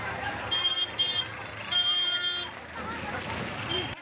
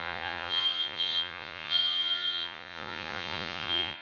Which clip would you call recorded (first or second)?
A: first